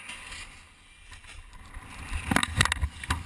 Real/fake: real